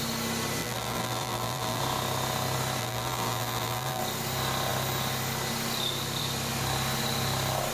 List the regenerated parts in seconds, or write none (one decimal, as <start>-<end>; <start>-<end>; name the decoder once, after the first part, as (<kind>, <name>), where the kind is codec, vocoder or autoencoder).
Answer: 0.6-1.8 (vocoder, BigVGAN v2); 2.8-4.0